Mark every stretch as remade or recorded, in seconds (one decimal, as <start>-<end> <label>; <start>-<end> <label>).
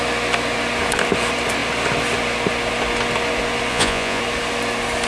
0.0-3.7 recorded; 3.7-4.2 remade; 4.2-5.1 recorded